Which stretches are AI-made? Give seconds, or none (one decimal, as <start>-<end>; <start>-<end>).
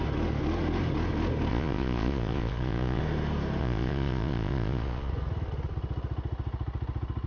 1.5-3.0; 3.6-5.1